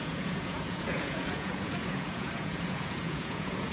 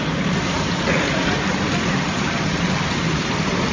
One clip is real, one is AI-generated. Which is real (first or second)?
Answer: second